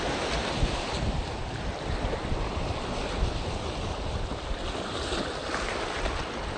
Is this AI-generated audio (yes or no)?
no